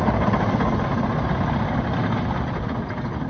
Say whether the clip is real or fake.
real